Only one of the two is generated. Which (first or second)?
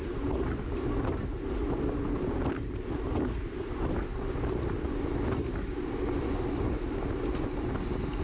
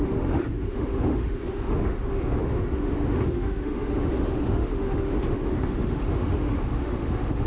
second